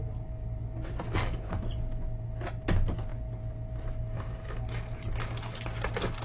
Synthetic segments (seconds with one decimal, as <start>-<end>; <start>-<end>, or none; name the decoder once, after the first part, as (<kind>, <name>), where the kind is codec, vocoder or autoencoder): none